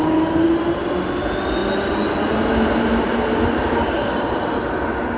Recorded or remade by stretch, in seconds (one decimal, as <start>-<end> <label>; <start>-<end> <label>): 0.0-5.2 recorded